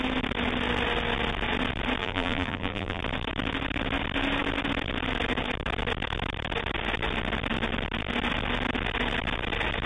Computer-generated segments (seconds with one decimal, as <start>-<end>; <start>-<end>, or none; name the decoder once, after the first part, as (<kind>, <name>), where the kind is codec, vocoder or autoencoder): 2.0-3.0 (vocoder, BigVGAN v2)